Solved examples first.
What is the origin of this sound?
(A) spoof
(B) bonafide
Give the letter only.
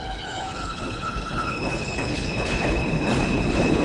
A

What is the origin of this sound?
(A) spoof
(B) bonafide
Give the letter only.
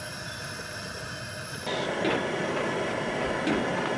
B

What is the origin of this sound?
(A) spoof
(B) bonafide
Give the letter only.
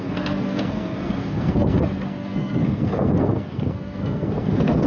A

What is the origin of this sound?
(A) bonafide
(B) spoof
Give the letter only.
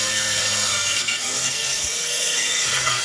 B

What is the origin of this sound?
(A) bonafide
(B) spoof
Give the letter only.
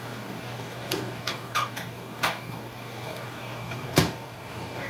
B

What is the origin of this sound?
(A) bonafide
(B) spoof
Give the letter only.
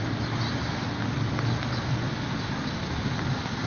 A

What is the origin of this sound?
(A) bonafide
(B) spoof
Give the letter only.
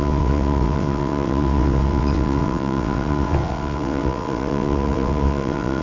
B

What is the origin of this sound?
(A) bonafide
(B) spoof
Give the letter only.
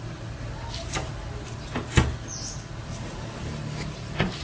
A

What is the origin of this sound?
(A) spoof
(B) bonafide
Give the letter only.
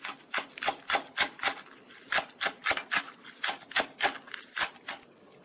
B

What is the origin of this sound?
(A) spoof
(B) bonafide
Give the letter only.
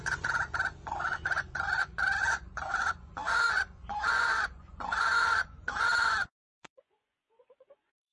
A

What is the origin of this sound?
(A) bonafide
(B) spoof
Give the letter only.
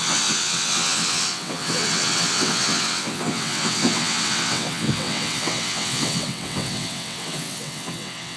B